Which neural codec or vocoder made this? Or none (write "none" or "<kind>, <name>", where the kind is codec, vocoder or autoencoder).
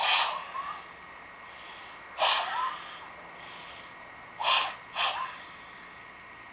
none